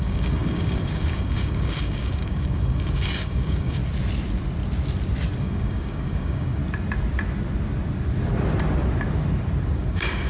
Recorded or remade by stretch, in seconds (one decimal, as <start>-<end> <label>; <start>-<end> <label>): 0.0-3.8 remade; 3.8-5.4 recorded; 5.4-6.6 remade; 6.6-9.9 recorded; 9.9-10.3 remade